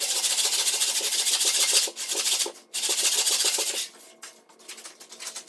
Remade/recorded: recorded